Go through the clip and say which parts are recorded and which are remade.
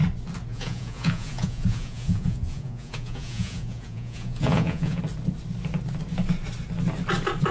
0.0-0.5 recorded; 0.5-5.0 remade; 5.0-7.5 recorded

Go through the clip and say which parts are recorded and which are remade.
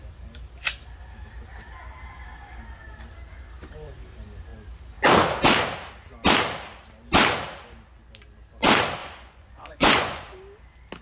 0.0-9.0 recorded; 9.0-10.2 remade; 10.2-11.0 recorded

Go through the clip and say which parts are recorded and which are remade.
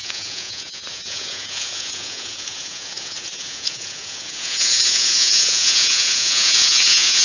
0.0-7.2 remade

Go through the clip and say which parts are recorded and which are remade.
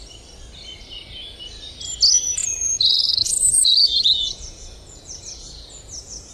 0.0-2.4 recorded; 2.4-6.3 remade